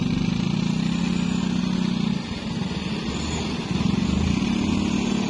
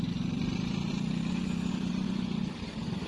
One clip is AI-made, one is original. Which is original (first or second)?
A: first